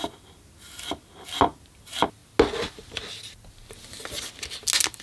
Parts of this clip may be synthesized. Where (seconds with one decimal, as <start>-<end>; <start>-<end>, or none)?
none